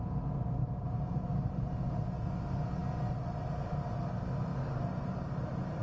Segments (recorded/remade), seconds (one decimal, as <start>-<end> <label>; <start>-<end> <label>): 0.0-0.6 recorded; 0.6-1.7 remade; 1.7-5.8 recorded